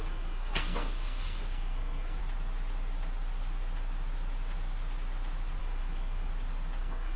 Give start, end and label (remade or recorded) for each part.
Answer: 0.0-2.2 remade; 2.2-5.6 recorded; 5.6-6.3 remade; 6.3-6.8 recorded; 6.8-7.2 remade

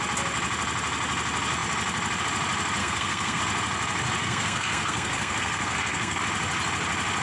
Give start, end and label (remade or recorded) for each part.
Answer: 0.0-2.8 recorded; 2.8-3.4 remade; 3.4-4.2 recorded; 4.2-6.2 remade; 6.2-7.2 recorded